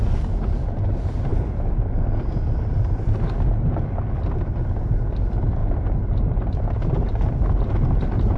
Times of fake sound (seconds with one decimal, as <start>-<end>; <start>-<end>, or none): none